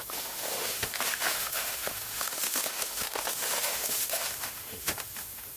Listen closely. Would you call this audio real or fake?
fake